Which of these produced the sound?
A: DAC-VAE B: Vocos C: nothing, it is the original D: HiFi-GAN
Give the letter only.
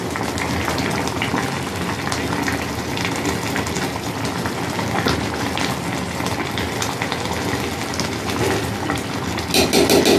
C